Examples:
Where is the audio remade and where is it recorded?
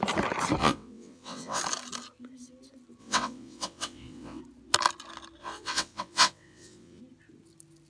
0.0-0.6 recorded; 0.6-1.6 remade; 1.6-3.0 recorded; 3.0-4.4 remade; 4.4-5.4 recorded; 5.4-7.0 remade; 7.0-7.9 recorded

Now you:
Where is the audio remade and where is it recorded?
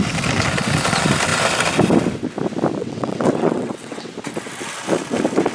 0.0-2.8 recorded; 2.8-4.1 remade; 4.1-5.5 recorded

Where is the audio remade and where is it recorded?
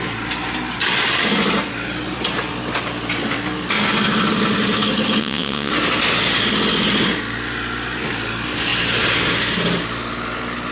0.0-5.2 recorded; 5.2-5.7 remade; 5.7-10.7 recorded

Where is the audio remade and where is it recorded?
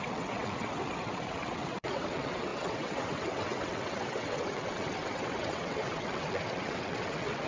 0.0-7.5 remade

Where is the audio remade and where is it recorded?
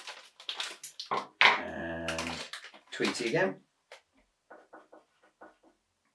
0.0-6.1 recorded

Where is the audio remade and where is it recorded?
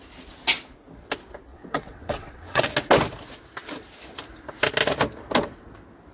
0.0-1.5 recorded; 1.5-2.7 remade; 2.7-6.1 recorded